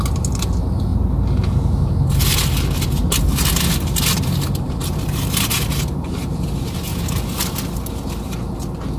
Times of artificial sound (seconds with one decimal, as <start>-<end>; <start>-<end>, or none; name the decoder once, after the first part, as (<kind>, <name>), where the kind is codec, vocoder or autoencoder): none